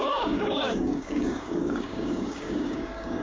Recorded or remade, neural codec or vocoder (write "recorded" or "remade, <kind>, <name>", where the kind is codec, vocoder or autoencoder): remade, codec, DAC